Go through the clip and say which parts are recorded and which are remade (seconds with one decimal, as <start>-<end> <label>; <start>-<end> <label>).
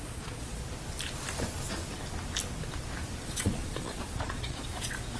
0.0-0.6 remade; 0.6-3.2 recorded; 3.2-5.2 remade